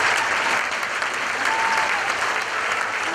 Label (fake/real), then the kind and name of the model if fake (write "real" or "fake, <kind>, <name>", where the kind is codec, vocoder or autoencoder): fake, vocoder, BigVGAN v2